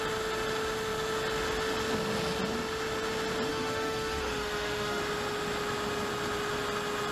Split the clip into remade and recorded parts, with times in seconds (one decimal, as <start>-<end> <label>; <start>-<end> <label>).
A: 0.0-3.5 recorded; 3.5-5.0 remade; 5.0-7.1 recorded